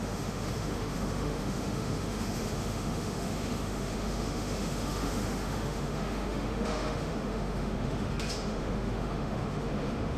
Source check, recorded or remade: remade